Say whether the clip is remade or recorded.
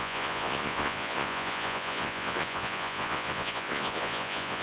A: remade